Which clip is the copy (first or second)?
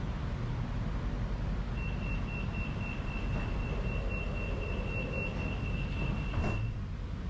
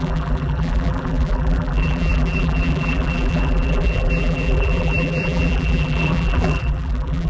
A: second